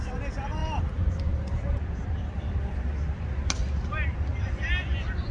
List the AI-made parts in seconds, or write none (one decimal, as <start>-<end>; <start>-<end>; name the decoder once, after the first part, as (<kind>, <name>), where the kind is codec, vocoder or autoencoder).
0.6-3.5 (vocoder, BigVGAN v2); 4.3-5.3